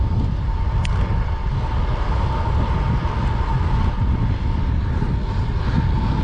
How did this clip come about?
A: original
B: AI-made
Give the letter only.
A